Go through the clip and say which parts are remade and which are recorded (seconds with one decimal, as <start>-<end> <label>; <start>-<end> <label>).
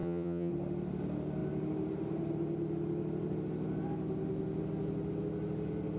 0.0-0.5 remade; 0.5-6.0 recorded